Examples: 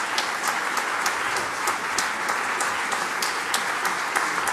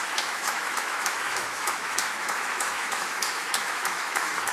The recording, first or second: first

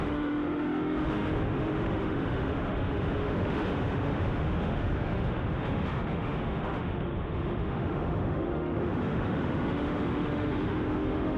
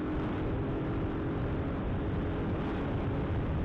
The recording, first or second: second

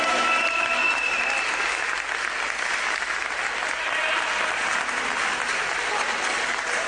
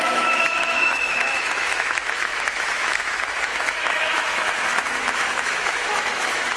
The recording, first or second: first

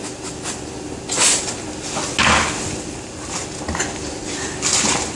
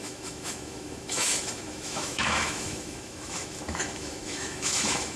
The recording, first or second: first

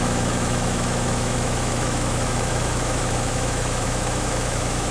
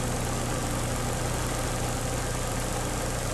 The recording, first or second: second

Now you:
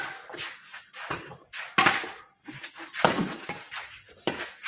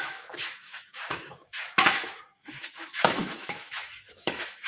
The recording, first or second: first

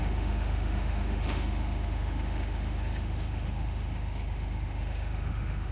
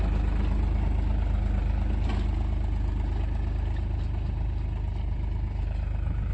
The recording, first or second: second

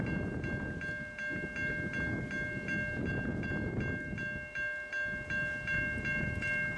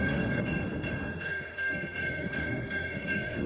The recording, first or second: first